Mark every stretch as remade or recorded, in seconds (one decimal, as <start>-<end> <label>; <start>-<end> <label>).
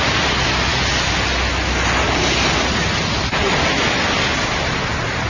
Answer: 0.0-5.3 recorded